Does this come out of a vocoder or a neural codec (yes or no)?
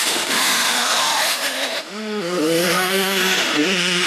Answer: yes